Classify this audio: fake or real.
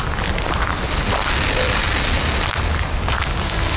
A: real